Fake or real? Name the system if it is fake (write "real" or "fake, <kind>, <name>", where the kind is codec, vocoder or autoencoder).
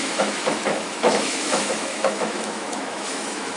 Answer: fake, autoencoder, DAC-VAE